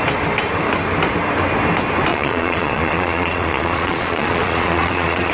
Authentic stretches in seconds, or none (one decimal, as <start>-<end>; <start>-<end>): 0.0-2.1